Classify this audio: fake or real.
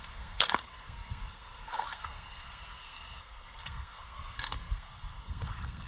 fake